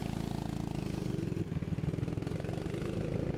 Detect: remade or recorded recorded